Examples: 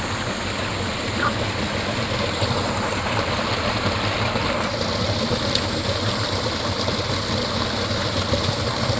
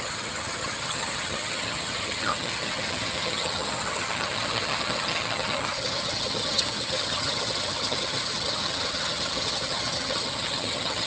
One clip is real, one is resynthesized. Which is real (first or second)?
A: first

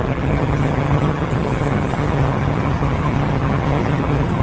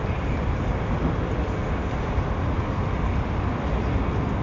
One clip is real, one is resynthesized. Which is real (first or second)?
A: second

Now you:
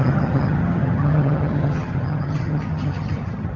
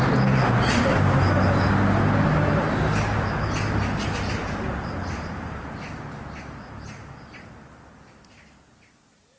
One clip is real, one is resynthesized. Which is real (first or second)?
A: second